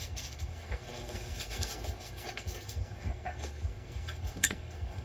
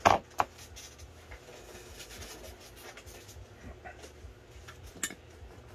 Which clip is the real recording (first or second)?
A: second